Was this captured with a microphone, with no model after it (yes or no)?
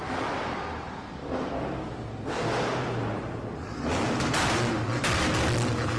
yes